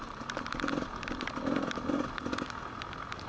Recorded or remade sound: recorded